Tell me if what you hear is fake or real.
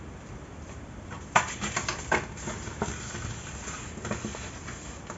real